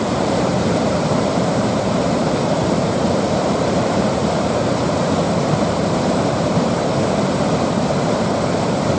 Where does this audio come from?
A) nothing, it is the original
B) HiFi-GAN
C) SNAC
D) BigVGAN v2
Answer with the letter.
D